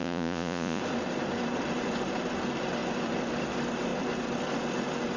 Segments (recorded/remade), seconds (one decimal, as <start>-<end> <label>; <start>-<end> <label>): 0.0-0.8 remade; 0.8-5.2 recorded